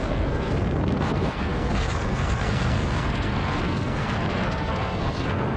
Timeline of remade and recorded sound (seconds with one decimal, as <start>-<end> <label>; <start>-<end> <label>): 0.0-5.6 remade